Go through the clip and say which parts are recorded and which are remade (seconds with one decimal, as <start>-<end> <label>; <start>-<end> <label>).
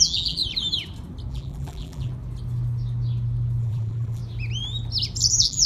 0.0-0.4 remade; 0.4-1.3 recorded; 1.3-2.1 remade; 2.1-3.6 recorded; 3.6-4.2 remade; 4.2-5.3 recorded; 5.3-5.7 remade